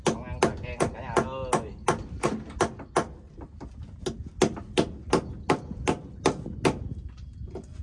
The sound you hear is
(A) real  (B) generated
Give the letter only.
A